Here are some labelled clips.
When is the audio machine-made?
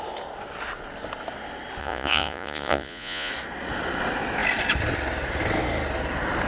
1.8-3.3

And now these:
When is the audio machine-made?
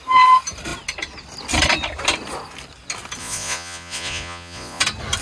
3.2-4.8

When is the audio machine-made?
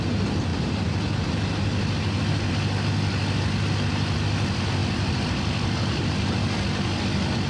none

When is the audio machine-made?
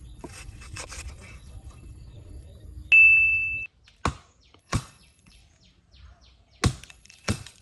0.0-2.5; 4.6-5.4; 6.9-7.6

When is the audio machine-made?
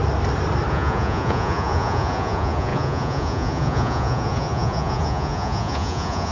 0.7-6.3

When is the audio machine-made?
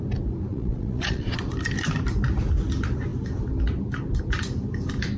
0.5-1.4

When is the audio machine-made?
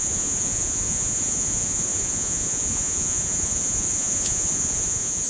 0.0-5.3